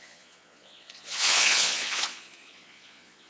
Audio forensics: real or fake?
fake